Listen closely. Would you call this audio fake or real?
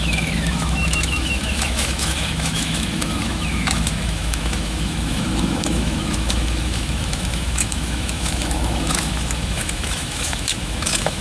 fake